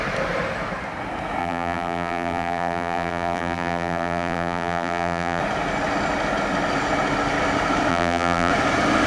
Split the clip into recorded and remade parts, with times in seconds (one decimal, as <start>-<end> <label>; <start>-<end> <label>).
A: 0.0-1.4 recorded; 1.4-5.4 remade; 5.4-7.9 recorded; 7.9-8.5 remade; 8.5-9.1 recorded